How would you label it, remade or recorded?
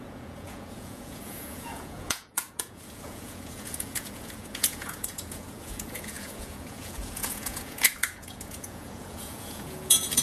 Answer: remade